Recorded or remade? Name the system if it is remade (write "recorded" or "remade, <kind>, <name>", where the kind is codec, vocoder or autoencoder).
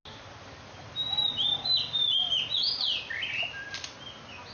recorded